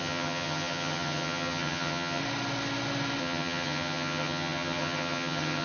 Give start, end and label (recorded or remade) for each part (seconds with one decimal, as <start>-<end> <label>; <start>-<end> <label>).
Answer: 0.0-2.2 remade; 2.2-3.2 recorded; 3.2-5.6 remade